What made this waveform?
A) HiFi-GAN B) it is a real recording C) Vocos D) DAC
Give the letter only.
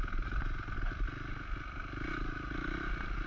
B